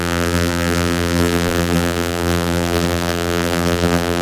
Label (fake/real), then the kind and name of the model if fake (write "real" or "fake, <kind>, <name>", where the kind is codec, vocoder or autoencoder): fake, vocoder, BigVGAN v2